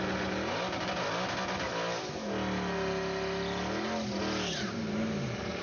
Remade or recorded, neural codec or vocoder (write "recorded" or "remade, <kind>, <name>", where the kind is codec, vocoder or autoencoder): recorded